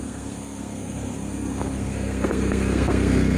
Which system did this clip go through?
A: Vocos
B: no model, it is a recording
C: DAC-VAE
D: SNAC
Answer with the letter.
D